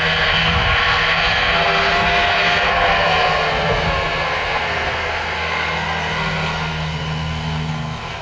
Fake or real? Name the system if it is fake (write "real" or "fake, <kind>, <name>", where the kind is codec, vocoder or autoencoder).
fake, codec, SNAC